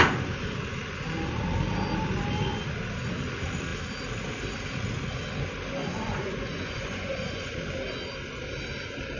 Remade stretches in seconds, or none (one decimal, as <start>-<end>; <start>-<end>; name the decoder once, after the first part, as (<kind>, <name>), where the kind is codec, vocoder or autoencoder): 5.8-7.5 (vocoder, Vocos)